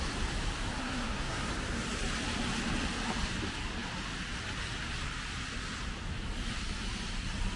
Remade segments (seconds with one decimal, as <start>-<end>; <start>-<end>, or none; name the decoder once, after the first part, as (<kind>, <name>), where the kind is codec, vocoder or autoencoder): 0.8-1.5 (codec, SNAC)